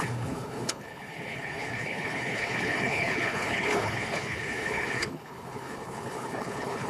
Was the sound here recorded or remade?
remade